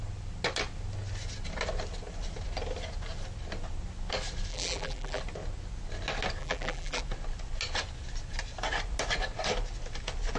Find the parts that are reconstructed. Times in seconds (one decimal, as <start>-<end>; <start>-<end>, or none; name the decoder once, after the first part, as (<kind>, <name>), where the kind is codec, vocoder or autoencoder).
4.5-5.2 (vocoder, BigVGAN v2); 6.4-7.0